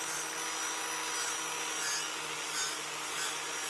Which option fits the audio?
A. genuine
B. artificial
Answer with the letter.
A